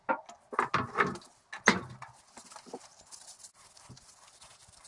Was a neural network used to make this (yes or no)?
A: no